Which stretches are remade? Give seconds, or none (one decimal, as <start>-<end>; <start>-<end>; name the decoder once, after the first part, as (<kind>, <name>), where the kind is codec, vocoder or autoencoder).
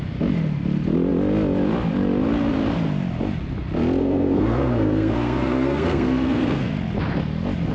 4.0-6.7 (codec, SNAC)